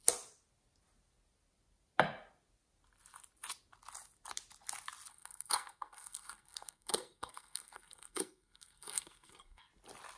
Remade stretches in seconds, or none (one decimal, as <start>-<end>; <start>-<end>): 5.1-9.7